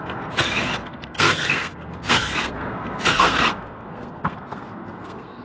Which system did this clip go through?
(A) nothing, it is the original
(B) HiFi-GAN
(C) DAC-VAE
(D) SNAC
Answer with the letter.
D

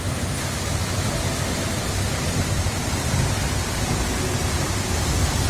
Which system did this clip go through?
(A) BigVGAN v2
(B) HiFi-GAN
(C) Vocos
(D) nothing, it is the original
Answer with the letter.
D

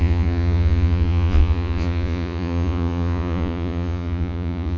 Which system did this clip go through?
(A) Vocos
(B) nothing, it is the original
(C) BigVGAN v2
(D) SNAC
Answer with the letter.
A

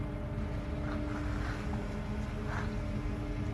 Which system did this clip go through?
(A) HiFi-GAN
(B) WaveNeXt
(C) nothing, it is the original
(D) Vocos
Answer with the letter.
C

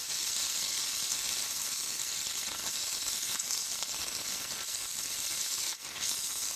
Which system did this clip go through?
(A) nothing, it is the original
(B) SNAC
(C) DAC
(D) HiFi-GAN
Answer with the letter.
B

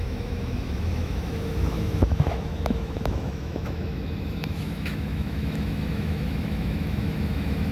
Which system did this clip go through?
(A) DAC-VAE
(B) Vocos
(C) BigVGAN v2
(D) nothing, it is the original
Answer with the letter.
A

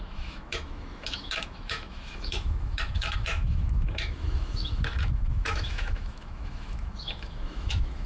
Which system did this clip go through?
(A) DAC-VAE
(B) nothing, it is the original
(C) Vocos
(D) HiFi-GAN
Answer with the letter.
A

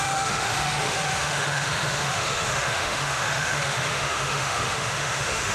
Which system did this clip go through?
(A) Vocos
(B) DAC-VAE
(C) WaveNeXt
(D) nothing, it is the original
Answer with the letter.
B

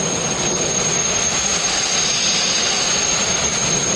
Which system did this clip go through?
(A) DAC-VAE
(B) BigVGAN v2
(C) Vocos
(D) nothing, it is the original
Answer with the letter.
D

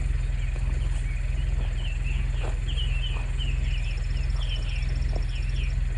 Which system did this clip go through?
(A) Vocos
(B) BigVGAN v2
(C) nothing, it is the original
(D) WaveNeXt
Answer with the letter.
C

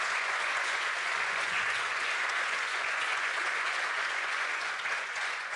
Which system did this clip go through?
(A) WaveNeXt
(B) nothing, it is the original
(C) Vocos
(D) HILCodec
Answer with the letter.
C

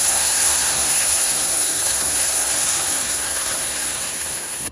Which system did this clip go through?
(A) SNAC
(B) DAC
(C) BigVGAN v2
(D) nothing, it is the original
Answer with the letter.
A